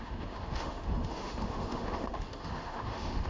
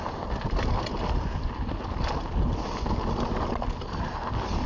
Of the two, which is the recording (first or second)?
second